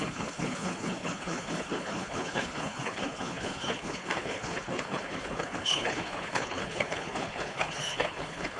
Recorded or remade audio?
remade